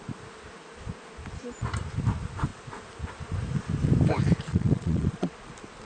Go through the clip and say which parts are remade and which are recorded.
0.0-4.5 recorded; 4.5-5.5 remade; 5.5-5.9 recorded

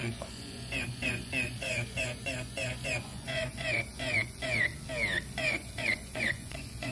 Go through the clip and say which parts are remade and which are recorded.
0.0-4.7 remade; 4.7-5.3 recorded; 5.3-6.9 remade